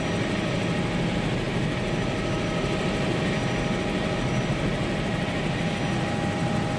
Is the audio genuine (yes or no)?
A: yes